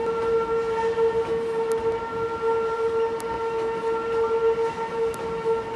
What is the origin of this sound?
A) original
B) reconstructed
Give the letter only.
A